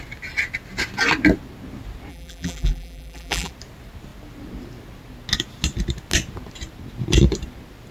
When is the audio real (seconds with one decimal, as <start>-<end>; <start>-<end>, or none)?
0.0-2.1; 3.5-7.9